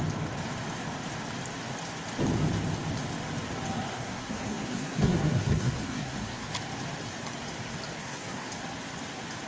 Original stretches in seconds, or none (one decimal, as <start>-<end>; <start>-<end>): 0.0-3.9; 6.5-8.0; 8.5-9.5